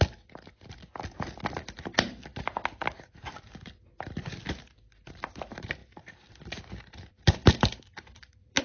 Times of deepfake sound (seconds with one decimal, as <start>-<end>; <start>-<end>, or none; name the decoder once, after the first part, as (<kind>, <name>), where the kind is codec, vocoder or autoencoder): 5.8-8.6 (vocoder, BigVGAN v2)